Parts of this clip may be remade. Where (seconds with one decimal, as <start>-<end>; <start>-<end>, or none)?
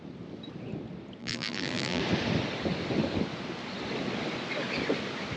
1.2-2.0